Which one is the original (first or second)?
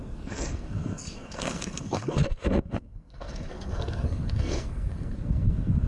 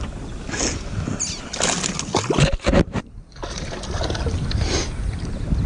second